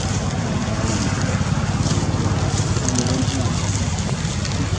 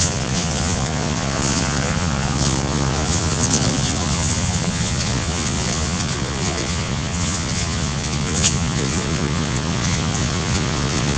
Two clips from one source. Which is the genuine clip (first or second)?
first